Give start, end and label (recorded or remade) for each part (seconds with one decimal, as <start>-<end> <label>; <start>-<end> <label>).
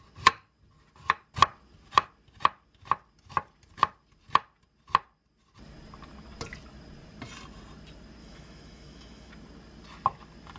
0.0-8.2 recorded; 8.2-9.3 remade; 9.3-10.6 recorded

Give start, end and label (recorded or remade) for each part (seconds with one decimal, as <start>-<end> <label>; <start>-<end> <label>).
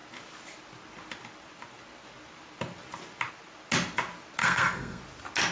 0.0-4.4 recorded; 4.4-5.0 remade; 5.0-5.5 recorded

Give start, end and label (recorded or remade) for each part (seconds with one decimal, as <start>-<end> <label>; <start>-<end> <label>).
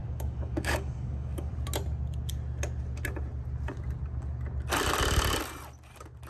0.0-1.5 remade; 1.5-6.3 recorded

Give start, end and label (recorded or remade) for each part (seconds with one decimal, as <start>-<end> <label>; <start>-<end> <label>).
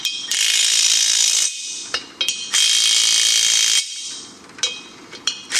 0.0-1.8 remade; 1.8-5.6 recorded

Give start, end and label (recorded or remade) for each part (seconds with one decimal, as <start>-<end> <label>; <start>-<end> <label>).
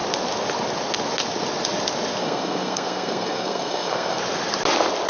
0.0-2.2 recorded; 2.2-4.2 remade; 4.2-5.1 recorded